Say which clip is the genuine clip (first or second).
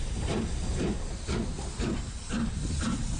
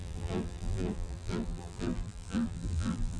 first